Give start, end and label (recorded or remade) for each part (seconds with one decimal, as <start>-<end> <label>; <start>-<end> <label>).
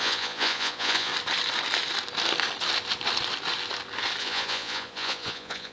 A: 0.0-1.1 remade; 1.1-4.2 recorded; 4.2-5.7 remade